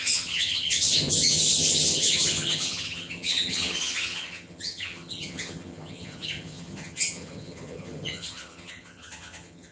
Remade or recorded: remade